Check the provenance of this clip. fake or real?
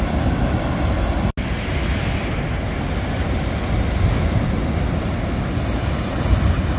real